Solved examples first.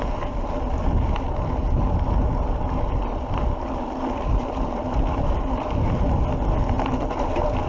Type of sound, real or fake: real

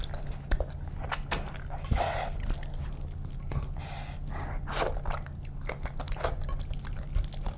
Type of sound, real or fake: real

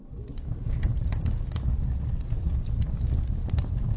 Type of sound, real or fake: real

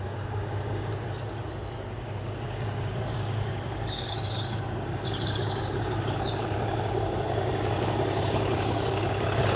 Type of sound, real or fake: fake